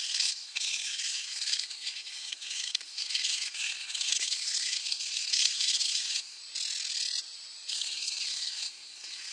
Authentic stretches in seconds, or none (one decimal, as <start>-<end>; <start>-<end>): 6.4-7.7